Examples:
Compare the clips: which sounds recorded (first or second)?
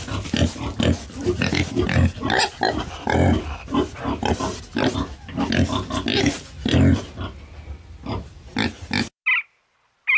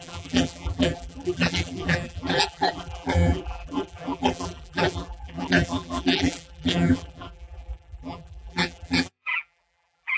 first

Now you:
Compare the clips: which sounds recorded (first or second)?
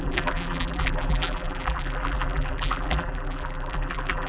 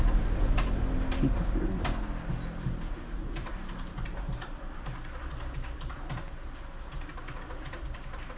second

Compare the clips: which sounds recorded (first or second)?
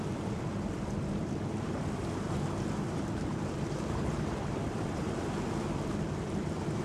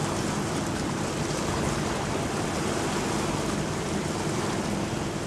second